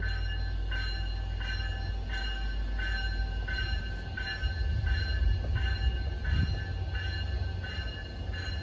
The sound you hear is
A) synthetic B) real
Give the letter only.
B